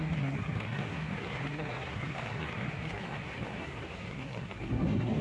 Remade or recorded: remade